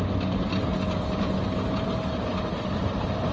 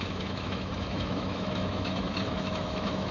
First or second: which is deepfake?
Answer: second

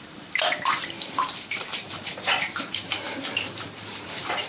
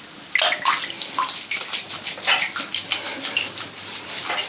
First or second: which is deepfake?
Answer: first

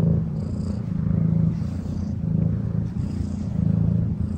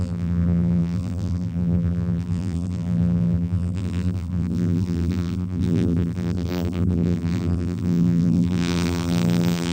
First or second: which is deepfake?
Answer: second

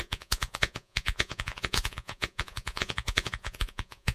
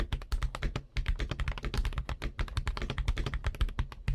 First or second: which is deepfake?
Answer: first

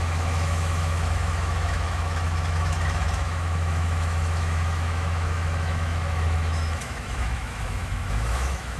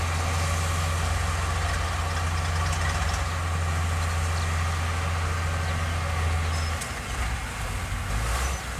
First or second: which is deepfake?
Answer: first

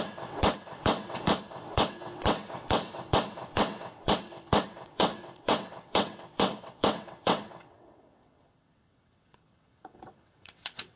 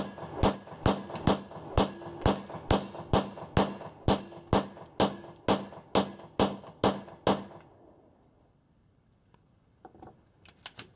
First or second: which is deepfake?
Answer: first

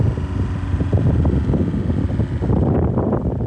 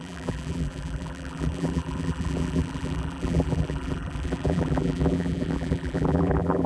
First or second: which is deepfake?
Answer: second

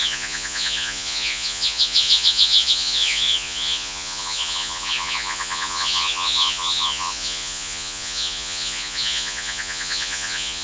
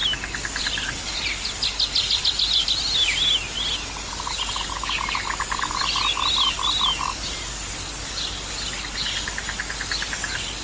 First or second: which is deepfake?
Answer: first